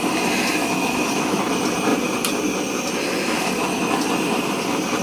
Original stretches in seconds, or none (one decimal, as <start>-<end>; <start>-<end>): 0.0-0.6; 1.4-5.0